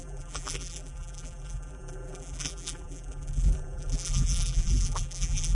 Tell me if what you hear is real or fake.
fake